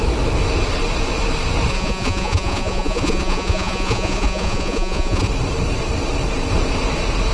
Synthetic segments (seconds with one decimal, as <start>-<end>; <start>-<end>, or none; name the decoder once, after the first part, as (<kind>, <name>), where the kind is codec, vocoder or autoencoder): 1.7-5.3 (vocoder, Vocos)

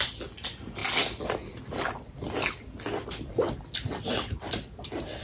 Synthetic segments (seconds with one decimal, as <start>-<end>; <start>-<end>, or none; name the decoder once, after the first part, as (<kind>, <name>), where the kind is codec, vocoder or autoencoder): none

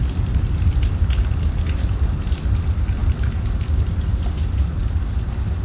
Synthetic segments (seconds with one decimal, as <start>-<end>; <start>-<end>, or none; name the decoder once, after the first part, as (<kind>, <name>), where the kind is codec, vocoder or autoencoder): none

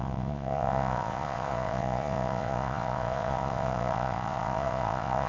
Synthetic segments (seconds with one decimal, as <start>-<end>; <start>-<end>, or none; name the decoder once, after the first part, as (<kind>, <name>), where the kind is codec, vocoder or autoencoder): 0.0-5.3 (vocoder, Vocos)

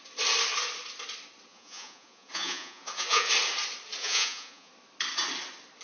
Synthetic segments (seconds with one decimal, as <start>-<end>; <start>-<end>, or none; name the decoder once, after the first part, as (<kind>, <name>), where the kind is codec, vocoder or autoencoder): 1.5-3.3 (vocoder, Vocos); 4.0-4.7

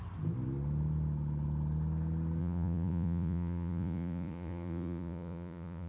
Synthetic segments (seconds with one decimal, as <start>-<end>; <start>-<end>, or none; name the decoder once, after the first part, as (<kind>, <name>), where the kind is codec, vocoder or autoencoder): 2.4-5.9 (vocoder, Vocos)